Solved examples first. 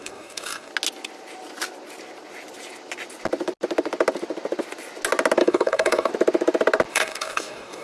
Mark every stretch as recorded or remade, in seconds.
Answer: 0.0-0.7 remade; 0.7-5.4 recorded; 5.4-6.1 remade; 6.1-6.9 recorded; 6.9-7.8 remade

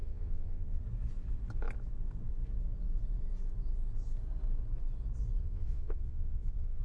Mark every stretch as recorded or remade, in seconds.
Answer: 0.0-0.8 remade; 0.8-5.4 recorded; 5.4-6.8 remade

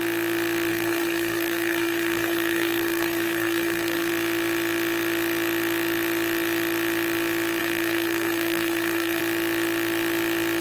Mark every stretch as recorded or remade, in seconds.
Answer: 0.0-0.7 recorded; 0.7-4.1 remade; 4.1-7.6 recorded; 7.6-9.2 remade; 9.2-10.6 recorded

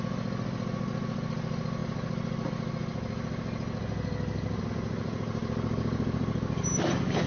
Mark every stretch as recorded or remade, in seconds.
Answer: 0.0-7.3 recorded

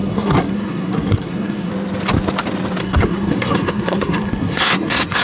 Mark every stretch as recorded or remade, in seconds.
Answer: 0.0-1.7 remade; 1.7-2.8 recorded; 2.8-5.2 remade

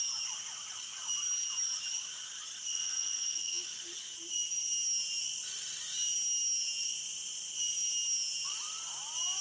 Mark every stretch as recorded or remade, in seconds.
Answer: 0.0-2.7 recorded; 2.7-3.6 remade; 3.6-9.4 recorded

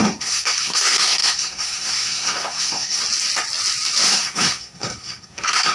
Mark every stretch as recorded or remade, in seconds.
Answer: 0.0-3.0 remade; 3.0-4.1 recorded; 4.1-5.7 remade